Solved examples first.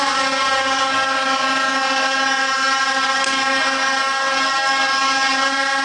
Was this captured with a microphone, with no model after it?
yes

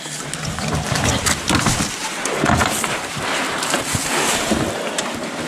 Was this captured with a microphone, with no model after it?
yes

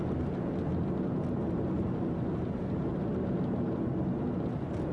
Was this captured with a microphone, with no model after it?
yes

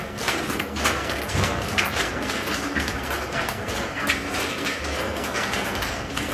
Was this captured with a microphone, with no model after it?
no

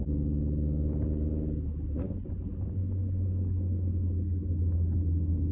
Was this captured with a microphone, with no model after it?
yes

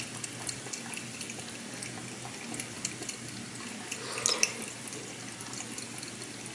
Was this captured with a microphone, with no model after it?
yes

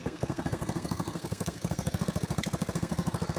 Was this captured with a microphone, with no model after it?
no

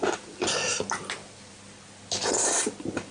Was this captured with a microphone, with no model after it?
yes